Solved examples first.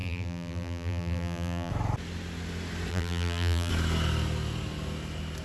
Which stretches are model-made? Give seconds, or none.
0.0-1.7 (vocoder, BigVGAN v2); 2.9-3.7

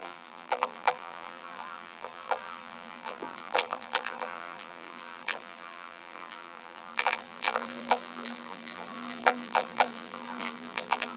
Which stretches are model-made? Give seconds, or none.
0.0-11.2 (vocoder, BigVGAN v2)

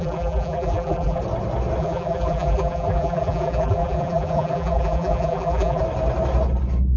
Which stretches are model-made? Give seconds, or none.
0.0-1.2 (vocoder, BigVGAN v2); 1.8-5.8

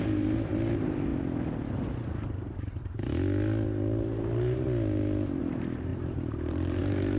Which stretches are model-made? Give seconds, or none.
0.0-1.1 (vocoder, BigVGAN v2); 5.4-7.2

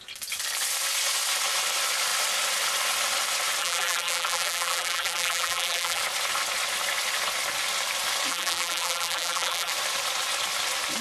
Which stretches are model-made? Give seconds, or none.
3.6-6.0 (vocoder, BigVGAN v2); 8.3-9.7

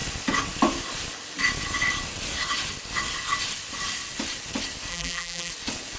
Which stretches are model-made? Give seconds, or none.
4.9-5.5 (vocoder, BigVGAN v2)

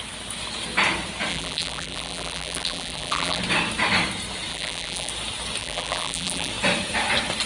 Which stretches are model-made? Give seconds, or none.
1.3-3.4 (vocoder, BigVGAN v2); 4.5-5.1; 5.6-6.5